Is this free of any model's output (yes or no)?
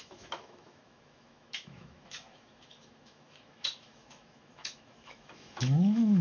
no